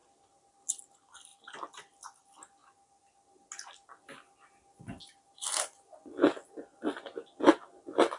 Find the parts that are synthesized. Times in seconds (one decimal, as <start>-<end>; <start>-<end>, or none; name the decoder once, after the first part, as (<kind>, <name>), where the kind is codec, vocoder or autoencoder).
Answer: none